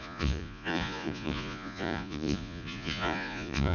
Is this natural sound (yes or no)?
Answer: no